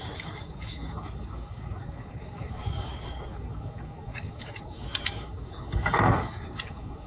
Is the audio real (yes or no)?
no